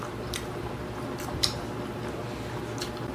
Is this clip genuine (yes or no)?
no